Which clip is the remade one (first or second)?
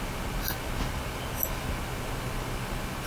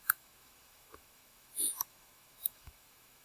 second